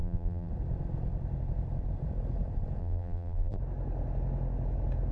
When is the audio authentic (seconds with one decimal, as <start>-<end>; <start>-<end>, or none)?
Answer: 0.5-2.8; 3.6-5.1